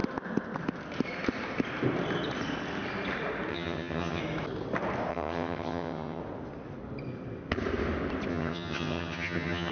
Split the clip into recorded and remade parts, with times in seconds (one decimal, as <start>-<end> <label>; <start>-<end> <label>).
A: 0.0-3.5 recorded; 3.5-4.2 remade; 4.2-5.1 recorded; 5.1-6.2 remade; 6.2-8.3 recorded; 8.3-9.7 remade